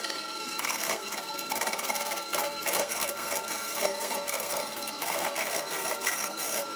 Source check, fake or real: fake